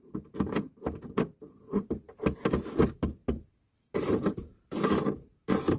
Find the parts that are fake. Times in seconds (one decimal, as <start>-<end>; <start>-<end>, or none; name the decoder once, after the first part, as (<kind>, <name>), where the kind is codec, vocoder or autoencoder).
0.0-0.7 (vocoder, BigVGAN v2); 1.4-5.8